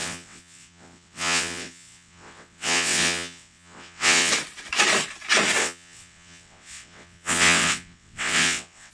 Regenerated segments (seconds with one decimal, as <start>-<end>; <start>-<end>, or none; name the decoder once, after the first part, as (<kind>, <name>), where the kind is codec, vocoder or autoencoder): 0.0-4.3 (vocoder, WaveNeXt); 5.6-8.9